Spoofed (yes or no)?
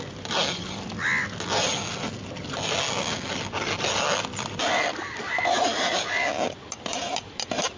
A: no